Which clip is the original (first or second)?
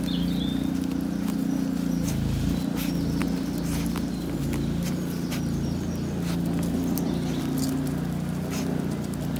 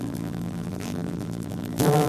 first